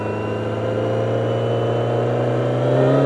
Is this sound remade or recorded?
recorded